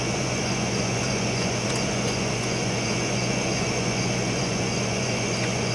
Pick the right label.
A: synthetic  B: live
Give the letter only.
A